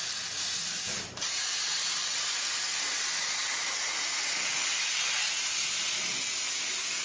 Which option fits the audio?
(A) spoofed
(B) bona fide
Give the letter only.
B